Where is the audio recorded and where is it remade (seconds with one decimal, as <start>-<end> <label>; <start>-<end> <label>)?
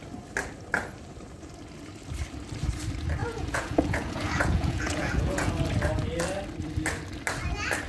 0.0-3.2 recorded; 3.2-5.5 remade; 5.5-7.9 recorded